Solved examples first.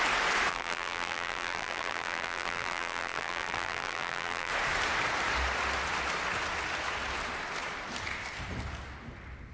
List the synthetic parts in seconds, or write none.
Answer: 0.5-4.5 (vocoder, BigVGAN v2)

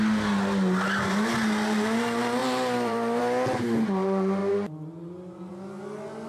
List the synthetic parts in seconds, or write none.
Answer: 2.4-3.2 (vocoder, BigVGAN v2); 4.4-5.5

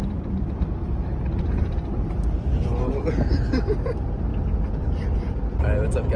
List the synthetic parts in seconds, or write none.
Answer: 0.0-2.9 (vocoder, BigVGAN v2)